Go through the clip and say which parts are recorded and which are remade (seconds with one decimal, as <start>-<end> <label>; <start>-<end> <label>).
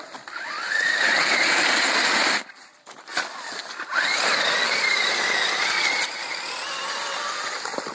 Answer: 0.0-7.9 recorded